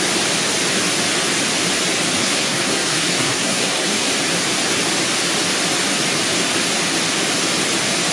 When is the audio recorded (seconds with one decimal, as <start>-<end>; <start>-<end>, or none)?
0.0-2.2; 4.1-8.1